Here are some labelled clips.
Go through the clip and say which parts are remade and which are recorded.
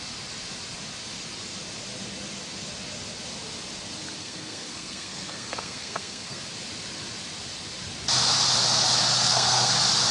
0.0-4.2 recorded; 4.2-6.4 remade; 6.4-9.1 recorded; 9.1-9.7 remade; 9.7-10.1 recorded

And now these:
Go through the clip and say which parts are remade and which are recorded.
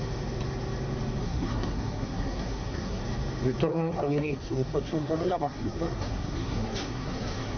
0.0-1.2 recorded; 1.2-3.0 remade; 3.0-3.7 recorded; 3.7-7.6 remade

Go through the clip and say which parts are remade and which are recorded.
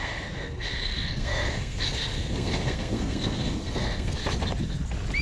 0.0-4.2 remade; 4.2-5.2 recorded